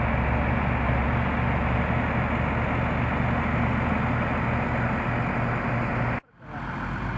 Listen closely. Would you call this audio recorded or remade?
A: recorded